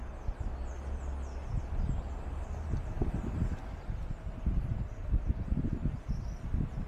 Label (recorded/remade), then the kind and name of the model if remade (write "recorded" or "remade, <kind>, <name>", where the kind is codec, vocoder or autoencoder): recorded